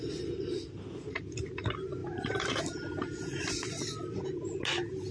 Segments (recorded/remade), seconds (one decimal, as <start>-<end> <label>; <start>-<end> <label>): 0.0-5.1 recorded